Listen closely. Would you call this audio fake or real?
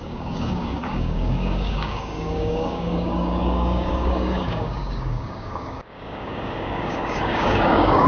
fake